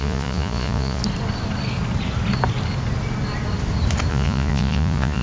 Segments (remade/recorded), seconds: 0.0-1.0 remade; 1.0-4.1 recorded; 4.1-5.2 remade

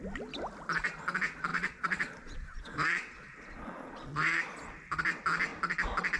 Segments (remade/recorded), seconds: 0.0-1.5 recorded; 1.5-4.7 remade; 4.7-6.2 recorded

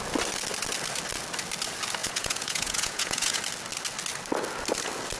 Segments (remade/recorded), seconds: 0.0-2.0 recorded; 2.0-3.4 remade; 3.4-5.2 recorded